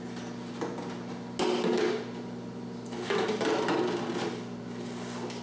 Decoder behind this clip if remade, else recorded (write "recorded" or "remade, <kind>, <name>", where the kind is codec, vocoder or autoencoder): recorded